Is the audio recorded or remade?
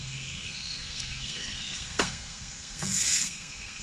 remade